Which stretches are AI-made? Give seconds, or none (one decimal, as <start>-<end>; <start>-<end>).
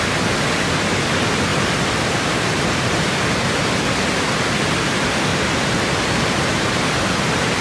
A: 1.5-3.1; 5.3-7.1